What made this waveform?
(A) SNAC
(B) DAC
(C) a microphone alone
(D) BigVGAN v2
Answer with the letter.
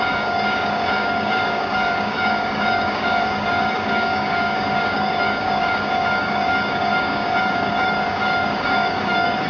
B